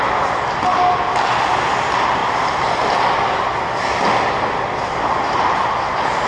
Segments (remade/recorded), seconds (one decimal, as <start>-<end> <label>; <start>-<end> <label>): 0.0-6.3 recorded